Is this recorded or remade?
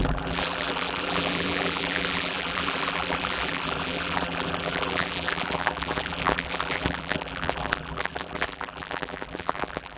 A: remade